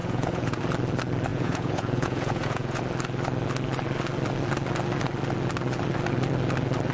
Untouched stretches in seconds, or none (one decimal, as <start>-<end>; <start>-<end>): 0.6-1.3; 2.8-6.9